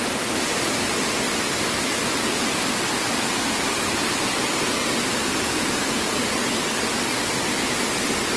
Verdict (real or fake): real